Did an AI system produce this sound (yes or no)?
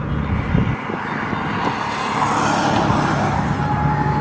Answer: no